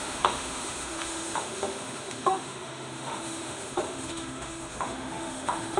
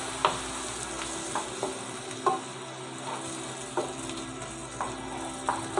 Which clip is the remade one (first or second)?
first